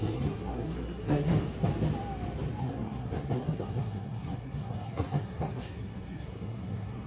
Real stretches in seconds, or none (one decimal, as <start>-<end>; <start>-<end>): 1.3-2.6